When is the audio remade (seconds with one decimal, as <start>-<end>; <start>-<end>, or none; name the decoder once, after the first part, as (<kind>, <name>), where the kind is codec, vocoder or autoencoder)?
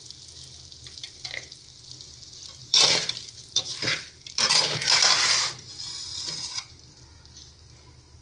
2.6-5.1 (vocoder, BigVGAN v2)